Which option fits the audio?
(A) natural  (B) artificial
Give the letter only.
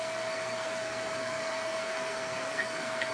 B